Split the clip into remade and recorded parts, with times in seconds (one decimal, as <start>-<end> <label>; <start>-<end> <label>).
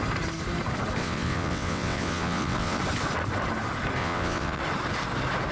0.0-1.0 recorded; 1.0-2.8 remade; 2.8-4.0 recorded; 4.0-4.6 remade; 4.6-5.5 recorded